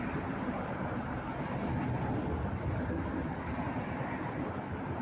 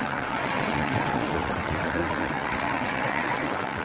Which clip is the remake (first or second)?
second